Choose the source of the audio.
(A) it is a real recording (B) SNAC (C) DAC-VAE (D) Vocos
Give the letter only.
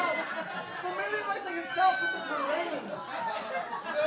A